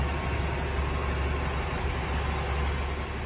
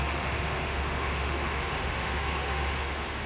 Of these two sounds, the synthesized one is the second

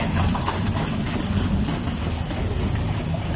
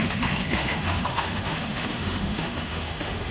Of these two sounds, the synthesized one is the second